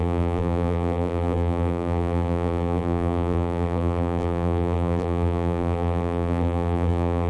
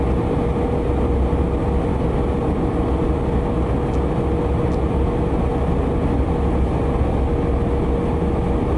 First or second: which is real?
second